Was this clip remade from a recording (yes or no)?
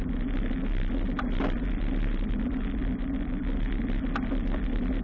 no